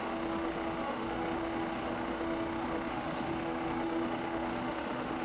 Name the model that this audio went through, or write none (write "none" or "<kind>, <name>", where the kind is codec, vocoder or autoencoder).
autoencoder, DAC-VAE